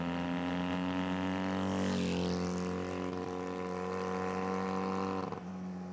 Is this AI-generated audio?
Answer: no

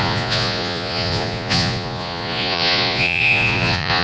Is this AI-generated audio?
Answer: yes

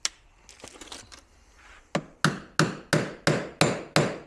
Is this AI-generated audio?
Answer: no